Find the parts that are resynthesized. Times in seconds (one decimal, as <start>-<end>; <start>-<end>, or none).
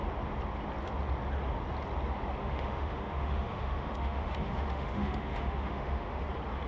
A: 2.4-6.2